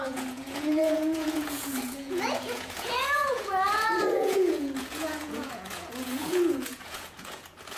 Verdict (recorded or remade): remade